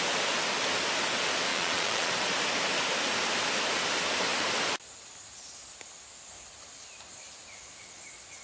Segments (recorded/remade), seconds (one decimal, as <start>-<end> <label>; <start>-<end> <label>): 0.0-1.5 recorded; 1.5-2.1 remade; 2.1-8.4 recorded